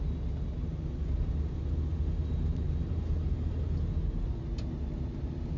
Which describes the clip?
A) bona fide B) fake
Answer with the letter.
A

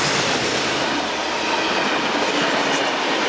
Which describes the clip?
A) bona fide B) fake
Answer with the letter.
A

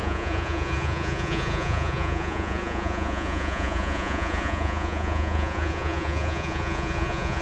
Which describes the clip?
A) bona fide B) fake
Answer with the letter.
B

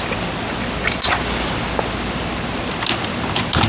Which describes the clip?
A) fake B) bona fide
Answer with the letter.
B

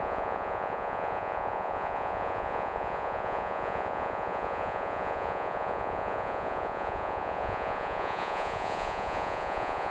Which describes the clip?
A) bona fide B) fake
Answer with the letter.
B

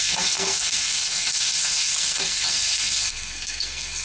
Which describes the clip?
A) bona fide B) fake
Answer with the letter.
B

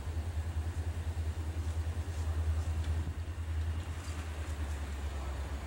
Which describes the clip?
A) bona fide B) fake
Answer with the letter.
A